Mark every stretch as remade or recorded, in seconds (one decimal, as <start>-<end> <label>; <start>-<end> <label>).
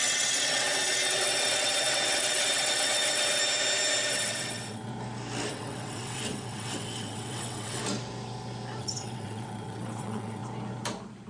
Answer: 0.0-3.4 remade; 3.4-4.1 recorded; 4.1-4.9 remade; 4.9-5.5 recorded; 5.5-7.8 remade; 7.8-8.8 recorded; 8.8-10.4 remade; 10.4-11.3 recorded